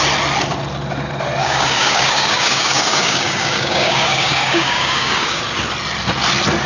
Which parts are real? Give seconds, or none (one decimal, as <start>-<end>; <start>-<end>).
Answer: 0.0-1.4; 5.4-6.7